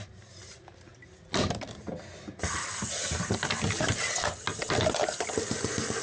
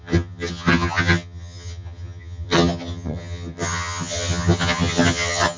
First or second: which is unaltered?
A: first